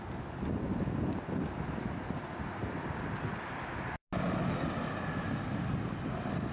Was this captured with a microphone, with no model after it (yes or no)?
yes